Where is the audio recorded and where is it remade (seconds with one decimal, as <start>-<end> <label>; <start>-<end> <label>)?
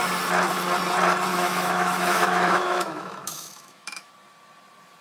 0.0-1.3 recorded; 1.3-4.1 remade; 4.1-5.0 recorded